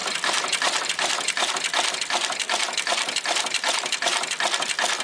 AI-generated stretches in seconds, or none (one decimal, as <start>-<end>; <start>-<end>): 0.0-1.5